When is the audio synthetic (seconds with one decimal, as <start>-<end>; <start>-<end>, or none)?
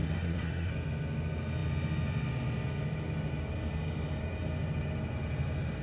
0.0-0.7